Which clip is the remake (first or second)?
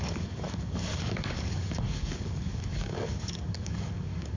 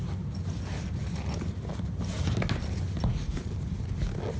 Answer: first